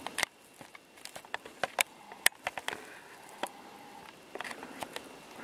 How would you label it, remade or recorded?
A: recorded